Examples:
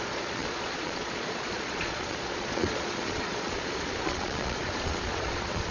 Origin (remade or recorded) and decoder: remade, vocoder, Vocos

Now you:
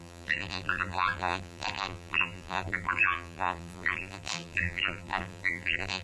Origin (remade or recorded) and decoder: remade, vocoder, BigVGAN v2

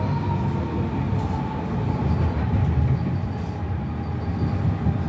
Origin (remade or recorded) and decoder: recorded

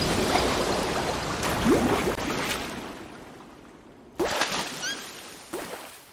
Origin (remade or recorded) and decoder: recorded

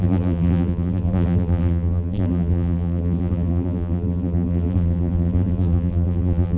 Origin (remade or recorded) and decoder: remade, vocoder, BigVGAN v2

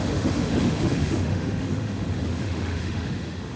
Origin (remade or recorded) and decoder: remade, autoencoder, DAC-VAE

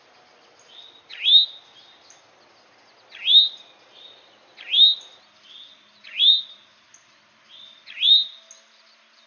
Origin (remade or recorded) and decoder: recorded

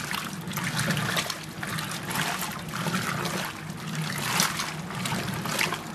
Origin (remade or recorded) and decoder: recorded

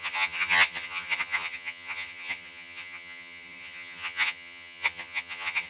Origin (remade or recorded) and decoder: remade, vocoder, HiFi-GAN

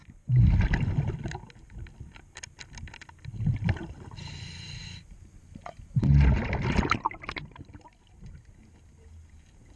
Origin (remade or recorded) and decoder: recorded